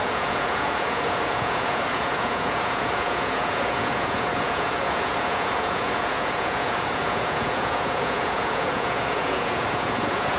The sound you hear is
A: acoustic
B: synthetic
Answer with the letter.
B